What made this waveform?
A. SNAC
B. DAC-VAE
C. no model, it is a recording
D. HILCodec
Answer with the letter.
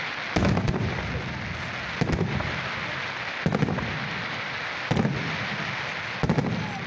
C